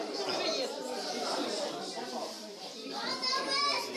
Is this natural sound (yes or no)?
no